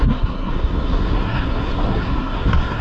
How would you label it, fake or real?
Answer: fake